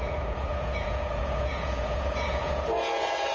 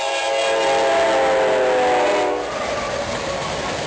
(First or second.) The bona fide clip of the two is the second